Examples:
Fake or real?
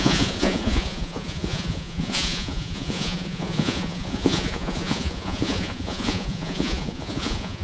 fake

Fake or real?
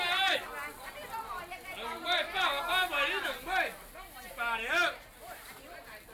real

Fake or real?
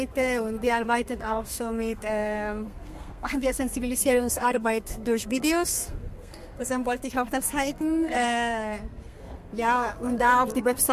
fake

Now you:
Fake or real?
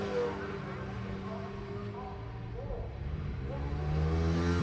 real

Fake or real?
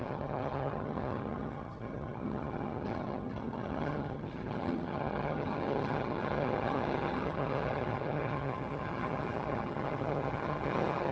fake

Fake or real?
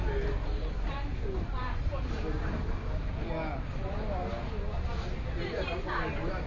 real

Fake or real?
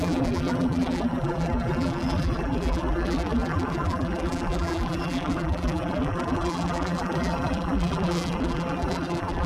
fake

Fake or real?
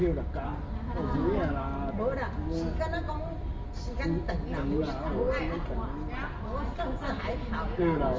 real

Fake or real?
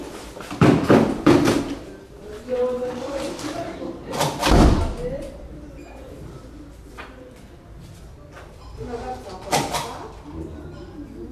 real